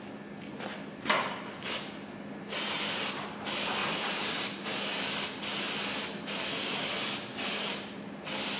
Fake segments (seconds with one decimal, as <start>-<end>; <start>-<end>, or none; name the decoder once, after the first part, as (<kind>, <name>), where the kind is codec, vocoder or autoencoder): 3.8-4.8 (vocoder, BigVGAN v2); 7.3-7.9